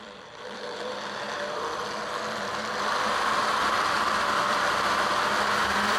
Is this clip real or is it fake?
fake